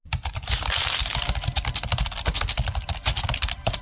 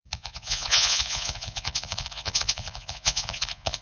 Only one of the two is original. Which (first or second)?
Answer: first